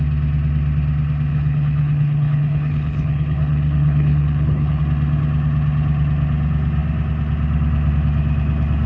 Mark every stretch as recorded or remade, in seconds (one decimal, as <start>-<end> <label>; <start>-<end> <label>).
0.0-1.3 recorded; 1.3-4.8 remade; 4.8-8.9 recorded

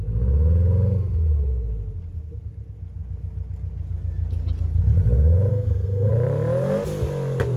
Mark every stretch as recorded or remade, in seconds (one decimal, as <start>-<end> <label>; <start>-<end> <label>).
0.0-5.5 recorded; 5.5-6.1 remade; 6.1-7.6 recorded